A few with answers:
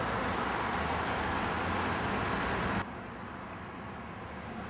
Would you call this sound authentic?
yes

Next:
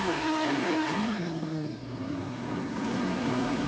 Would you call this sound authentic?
no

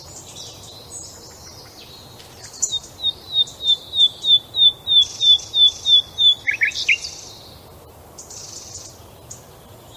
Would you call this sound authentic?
yes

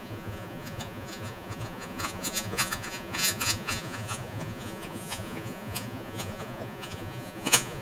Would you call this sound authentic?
no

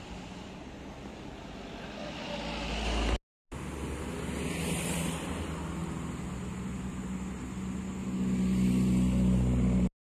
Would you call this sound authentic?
yes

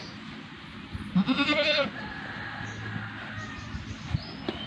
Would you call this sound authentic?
yes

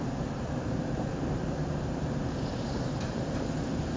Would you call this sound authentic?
no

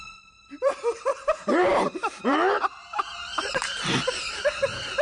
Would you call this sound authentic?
no